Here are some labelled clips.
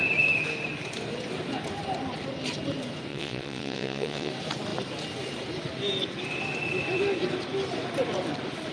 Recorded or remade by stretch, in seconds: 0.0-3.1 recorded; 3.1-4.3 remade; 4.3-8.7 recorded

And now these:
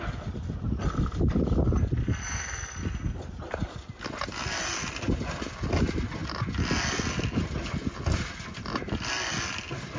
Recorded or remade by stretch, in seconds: 0.0-10.0 recorded

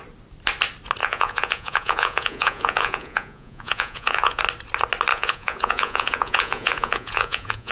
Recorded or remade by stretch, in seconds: 0.0-1.0 recorded; 1.0-4.4 remade; 4.4-5.1 recorded; 5.1-7.7 remade

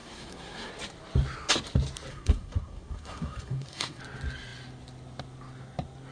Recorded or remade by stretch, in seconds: 0.0-0.7 remade; 0.7-2.1 recorded; 2.1-4.0 remade; 4.0-6.1 recorded

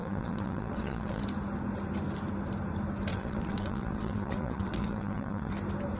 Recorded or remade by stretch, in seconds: 0.0-1.2 remade; 1.2-3.1 recorded; 3.1-5.5 remade; 5.5-6.0 recorded

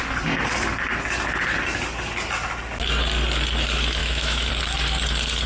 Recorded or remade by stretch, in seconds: 0.0-4.0 recorded; 4.0-4.5 remade; 4.5-5.5 recorded

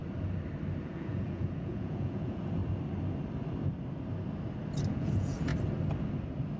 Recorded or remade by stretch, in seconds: 0.0-0.8 recorded; 0.8-2.6 remade; 2.6-4.9 recorded; 4.9-5.5 remade; 5.5-6.6 recorded

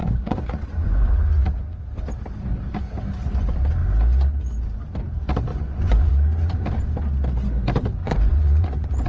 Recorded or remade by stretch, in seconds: 0.0-1.9 remade; 1.9-5.5 recorded; 5.5-6.1 remade; 6.1-8.0 recorded; 8.0-9.1 remade